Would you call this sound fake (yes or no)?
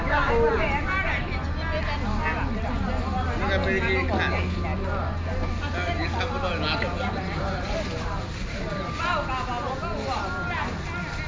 no